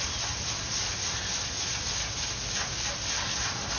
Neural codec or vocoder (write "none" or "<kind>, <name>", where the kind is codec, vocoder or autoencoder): none